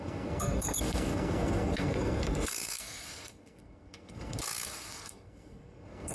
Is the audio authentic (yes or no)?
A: no